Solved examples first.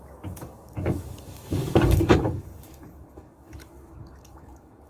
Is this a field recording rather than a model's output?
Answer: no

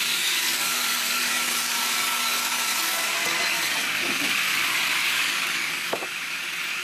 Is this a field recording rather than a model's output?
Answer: no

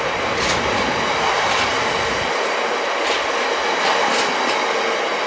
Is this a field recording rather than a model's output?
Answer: yes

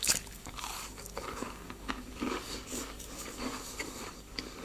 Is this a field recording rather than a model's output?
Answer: no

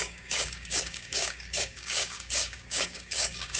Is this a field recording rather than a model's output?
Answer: no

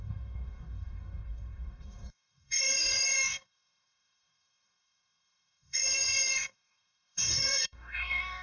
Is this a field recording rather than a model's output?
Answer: no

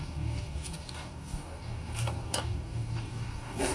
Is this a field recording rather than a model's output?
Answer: no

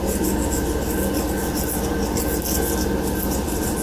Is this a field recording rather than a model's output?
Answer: yes